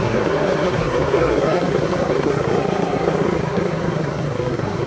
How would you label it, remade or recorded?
remade